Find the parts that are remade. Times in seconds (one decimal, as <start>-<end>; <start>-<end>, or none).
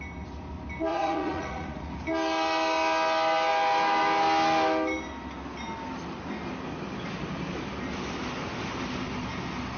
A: 0.9-1.9